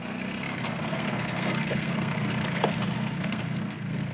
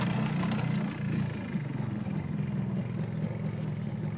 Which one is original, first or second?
second